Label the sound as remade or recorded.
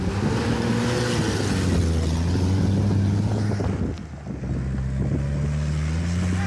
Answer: recorded